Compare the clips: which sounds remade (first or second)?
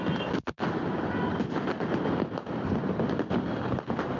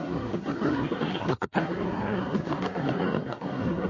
second